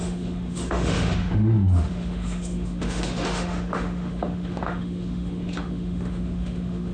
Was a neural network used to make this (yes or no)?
yes